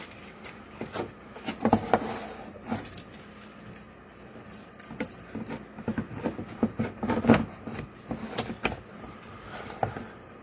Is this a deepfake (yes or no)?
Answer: no